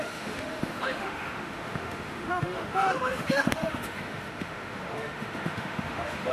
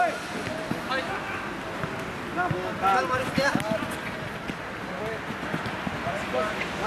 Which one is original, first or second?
second